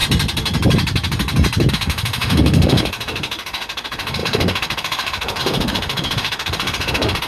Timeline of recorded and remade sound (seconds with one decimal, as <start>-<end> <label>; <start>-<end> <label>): 0.0-1.7 recorded; 1.7-7.3 remade